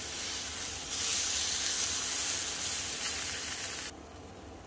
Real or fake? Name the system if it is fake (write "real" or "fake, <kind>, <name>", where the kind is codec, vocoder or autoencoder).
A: real